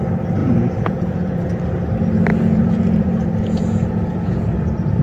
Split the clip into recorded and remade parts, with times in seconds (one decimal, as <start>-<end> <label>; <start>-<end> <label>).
0.0-0.4 recorded; 0.4-1.5 remade; 1.5-2.3 recorded; 2.3-4.5 remade; 4.5-5.0 recorded